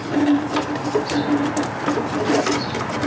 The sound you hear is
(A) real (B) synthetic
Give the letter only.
A